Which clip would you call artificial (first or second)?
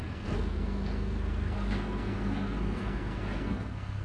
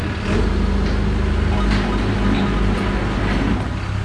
first